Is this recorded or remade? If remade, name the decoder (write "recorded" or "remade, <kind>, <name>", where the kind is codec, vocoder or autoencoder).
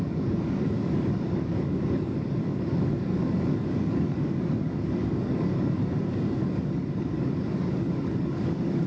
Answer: remade, codec, DAC